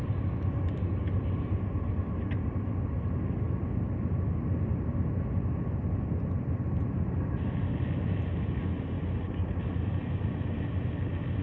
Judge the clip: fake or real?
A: real